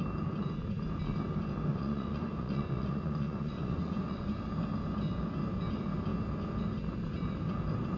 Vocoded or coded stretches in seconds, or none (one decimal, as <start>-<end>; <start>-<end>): 1.7-4.3